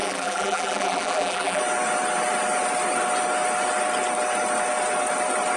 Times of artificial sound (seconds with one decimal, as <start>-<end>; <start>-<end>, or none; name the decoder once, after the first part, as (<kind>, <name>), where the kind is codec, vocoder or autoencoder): 0.0-1.6 (vocoder, BigVGAN v2)